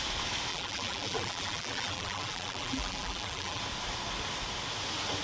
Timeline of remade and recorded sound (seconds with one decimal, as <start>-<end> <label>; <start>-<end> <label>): 0.0-0.5 recorded; 0.5-3.6 remade; 3.6-5.2 recorded